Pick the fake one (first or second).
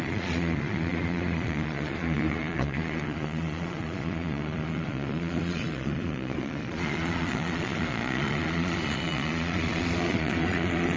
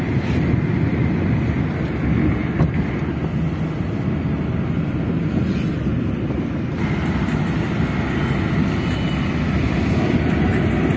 first